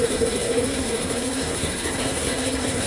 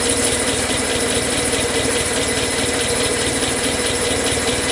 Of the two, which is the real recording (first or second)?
second